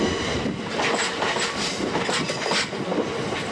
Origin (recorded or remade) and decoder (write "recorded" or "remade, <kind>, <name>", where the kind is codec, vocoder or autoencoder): recorded